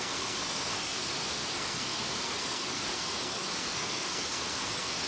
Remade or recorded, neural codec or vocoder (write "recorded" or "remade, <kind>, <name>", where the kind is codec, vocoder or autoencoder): remade, codec, SNAC